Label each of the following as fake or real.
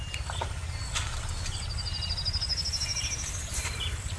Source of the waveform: real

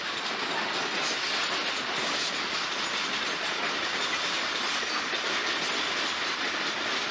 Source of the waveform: real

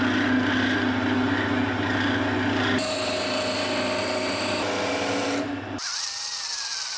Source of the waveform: real